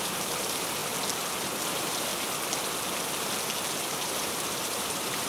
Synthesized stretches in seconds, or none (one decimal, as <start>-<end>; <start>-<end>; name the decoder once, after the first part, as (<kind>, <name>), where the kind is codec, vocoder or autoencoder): 0.0-0.8 (vocoder, BigVGAN v2); 1.7-2.1; 3.8-5.3